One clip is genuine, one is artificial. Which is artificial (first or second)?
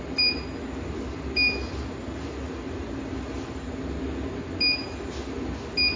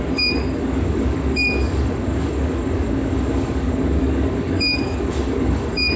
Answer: second